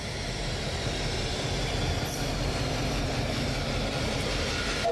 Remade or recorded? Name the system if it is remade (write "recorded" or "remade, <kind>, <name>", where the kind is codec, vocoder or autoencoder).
remade, vocoder, BigVGAN v2